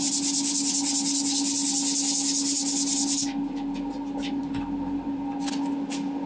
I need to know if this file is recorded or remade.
recorded